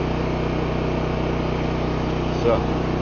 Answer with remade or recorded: recorded